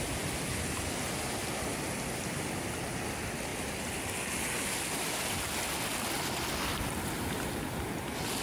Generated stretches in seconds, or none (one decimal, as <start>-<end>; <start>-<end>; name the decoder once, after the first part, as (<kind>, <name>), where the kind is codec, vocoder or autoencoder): none